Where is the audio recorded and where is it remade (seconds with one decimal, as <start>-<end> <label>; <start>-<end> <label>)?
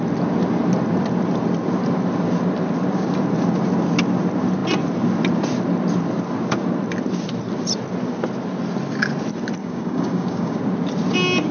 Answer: 0.0-9.6 recorded; 9.6-10.6 remade; 10.6-11.5 recorded